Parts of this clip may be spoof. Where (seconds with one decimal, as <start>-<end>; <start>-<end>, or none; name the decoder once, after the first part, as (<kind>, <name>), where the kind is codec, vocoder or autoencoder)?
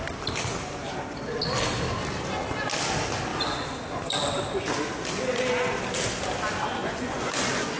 6.8-7.8 (vocoder, Vocos)